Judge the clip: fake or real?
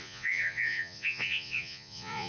fake